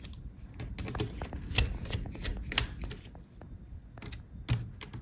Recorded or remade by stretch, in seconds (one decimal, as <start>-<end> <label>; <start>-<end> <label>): 0.0-5.0 recorded